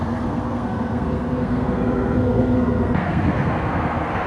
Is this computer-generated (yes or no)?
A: yes